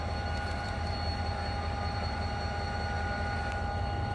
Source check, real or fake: real